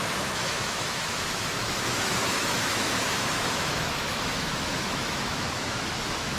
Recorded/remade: remade